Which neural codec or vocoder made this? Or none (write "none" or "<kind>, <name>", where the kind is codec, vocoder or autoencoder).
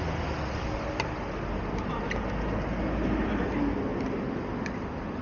none